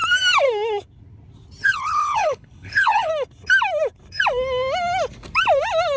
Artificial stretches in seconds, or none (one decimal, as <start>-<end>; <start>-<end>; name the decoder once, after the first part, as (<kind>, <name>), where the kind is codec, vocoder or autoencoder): 1.6-3.1 (codec, HILCodec)